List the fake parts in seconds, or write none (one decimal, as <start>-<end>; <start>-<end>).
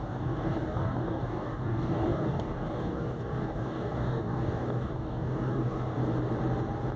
0.0-6.0